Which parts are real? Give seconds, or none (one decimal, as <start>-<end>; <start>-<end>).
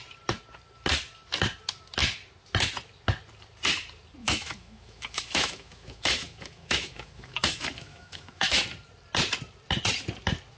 0.0-4.2; 8.6-10.6